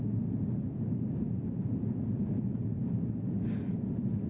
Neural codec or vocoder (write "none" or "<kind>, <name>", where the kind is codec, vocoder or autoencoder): none